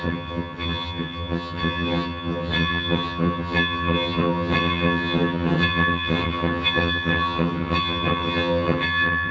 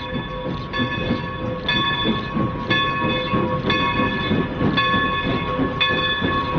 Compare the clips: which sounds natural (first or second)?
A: second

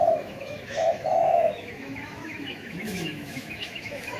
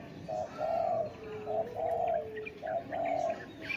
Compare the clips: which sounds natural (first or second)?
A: second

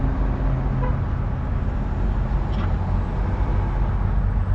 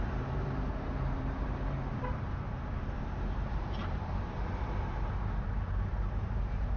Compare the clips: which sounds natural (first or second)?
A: first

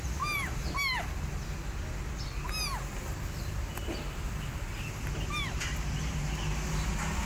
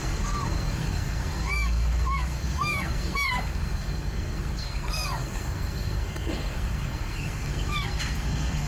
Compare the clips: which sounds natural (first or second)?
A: first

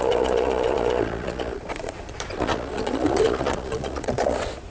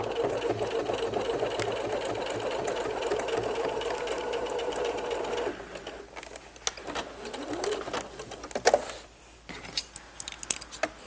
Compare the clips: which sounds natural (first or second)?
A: second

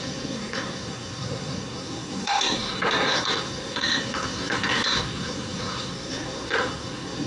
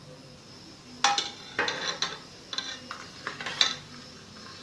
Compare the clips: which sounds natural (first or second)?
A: second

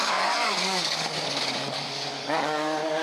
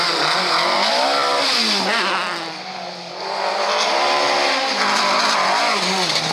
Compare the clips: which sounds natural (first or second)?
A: second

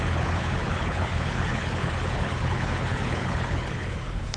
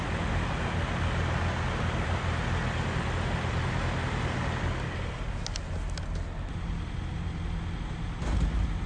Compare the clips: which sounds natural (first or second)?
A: second